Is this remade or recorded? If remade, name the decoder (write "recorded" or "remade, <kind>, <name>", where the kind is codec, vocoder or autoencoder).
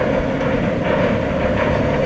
recorded